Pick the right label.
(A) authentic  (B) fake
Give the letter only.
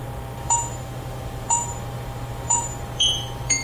B